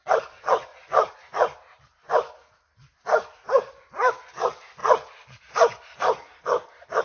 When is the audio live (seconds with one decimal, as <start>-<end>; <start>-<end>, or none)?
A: 0.0-7.0